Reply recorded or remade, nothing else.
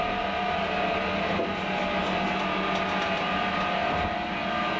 recorded